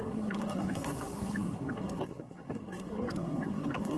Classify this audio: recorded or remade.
remade